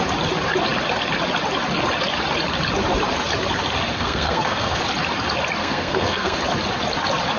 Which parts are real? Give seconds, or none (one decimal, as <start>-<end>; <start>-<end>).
0.0-3.9; 4.8-5.6; 6.4-7.4